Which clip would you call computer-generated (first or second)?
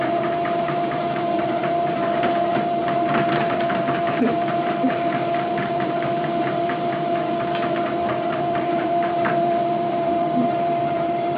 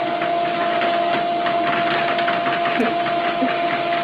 first